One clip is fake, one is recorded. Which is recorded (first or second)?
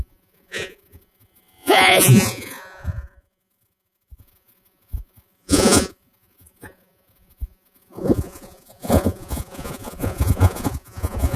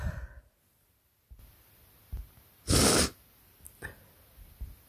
second